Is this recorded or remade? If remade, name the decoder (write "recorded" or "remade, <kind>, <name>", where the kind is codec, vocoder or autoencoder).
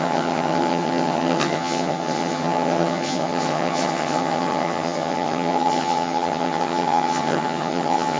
remade, vocoder, HiFi-GAN